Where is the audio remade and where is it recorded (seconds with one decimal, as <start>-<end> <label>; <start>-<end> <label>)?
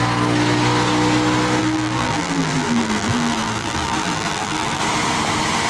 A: 0.0-1.6 recorded; 1.6-4.8 remade; 4.8-5.7 recorded